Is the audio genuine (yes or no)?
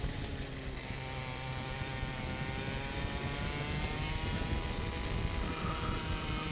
yes